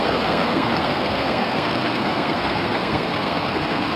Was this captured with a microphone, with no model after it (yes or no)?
no